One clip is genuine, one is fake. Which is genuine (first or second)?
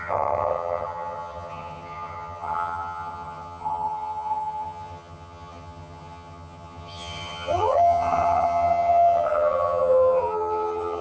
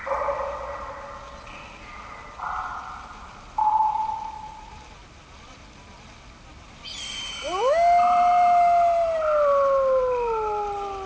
second